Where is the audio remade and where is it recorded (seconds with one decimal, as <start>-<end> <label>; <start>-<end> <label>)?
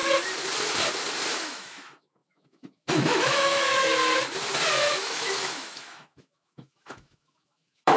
0.0-1.3 recorded; 1.3-3.9 remade; 3.9-4.8 recorded; 4.8-8.0 remade